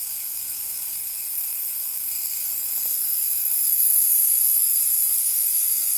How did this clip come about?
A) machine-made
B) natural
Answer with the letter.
A